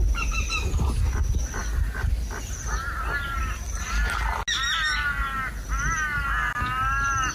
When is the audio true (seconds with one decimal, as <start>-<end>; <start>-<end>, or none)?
0.0-7.3